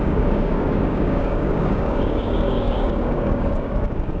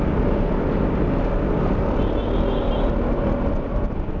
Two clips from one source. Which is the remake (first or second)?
first